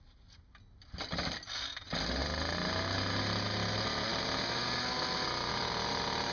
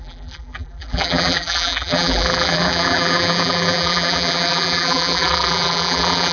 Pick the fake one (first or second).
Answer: second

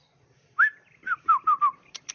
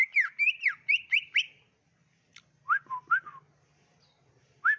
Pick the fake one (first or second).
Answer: first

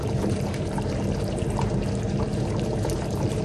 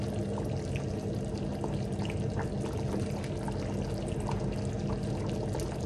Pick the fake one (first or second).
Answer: first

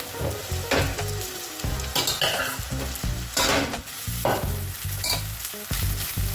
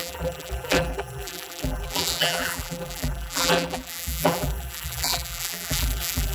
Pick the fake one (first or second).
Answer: second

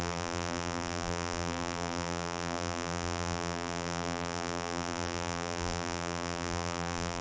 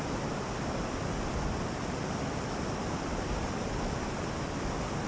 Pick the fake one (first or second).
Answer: first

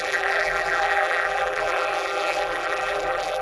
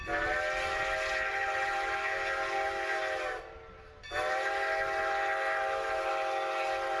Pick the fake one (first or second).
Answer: first